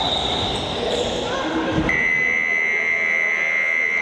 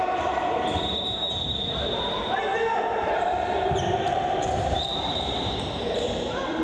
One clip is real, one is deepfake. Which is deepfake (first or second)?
second